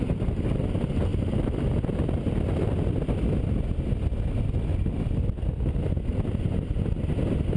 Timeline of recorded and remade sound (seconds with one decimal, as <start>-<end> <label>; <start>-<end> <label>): 0.0-1.1 recorded; 1.1-1.8 remade; 1.8-7.6 recorded